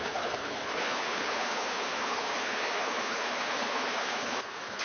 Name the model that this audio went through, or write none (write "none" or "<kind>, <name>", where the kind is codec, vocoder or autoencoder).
codec, HILCodec